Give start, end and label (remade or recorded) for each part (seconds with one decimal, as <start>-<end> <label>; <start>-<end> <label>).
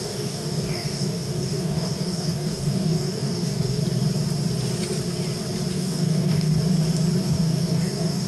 0.0-3.8 remade; 3.8-5.7 recorded; 5.7-6.5 remade; 6.5-7.2 recorded; 7.2-8.3 remade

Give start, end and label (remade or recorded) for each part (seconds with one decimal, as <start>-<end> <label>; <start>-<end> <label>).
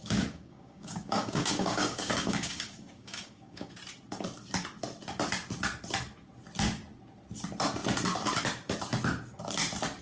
0.0-3.7 remade; 3.7-10.0 recorded